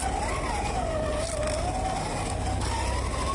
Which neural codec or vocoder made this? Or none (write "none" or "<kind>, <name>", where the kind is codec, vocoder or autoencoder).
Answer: none